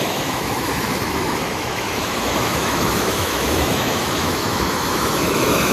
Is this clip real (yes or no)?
no